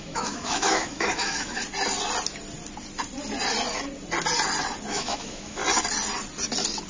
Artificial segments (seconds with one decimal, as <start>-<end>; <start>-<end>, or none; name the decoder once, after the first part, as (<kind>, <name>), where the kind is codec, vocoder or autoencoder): 0.0-1.6 (autoencoder, DAC-VAE); 4.9-5.6